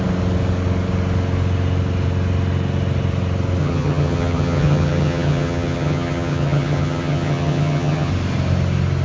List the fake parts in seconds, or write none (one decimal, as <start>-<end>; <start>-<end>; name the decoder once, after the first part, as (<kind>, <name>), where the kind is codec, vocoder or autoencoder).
3.6-8.1 (vocoder, HiFi-GAN)